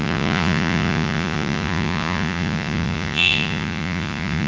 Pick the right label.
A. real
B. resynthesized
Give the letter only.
B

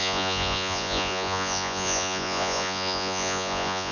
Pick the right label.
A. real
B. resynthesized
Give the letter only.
B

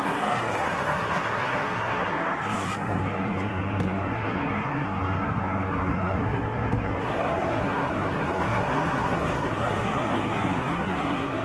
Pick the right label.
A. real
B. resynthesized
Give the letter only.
B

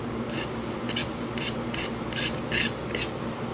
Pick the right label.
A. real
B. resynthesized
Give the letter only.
A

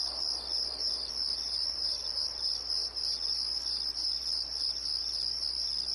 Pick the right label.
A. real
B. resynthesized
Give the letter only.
A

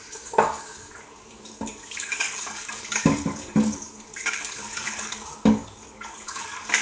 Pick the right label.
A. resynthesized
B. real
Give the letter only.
A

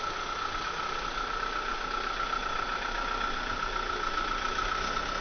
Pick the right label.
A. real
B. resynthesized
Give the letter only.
A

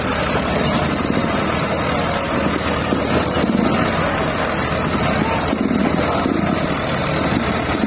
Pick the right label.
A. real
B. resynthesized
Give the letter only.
A